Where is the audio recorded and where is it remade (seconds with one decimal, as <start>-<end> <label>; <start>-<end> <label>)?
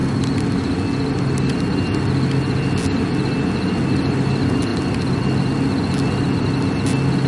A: 0.0-7.3 recorded